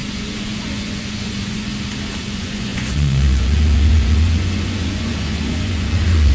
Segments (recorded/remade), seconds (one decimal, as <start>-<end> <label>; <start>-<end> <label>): 0.0-1.7 remade; 1.7-2.2 recorded; 2.2-6.3 remade